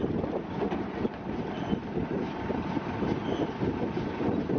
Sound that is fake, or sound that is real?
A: real